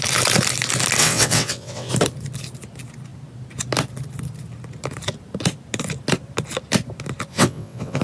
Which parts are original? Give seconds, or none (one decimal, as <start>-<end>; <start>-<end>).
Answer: 0.0-1.0; 1.9-7.3